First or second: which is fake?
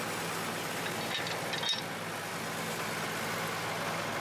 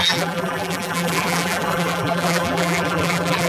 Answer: second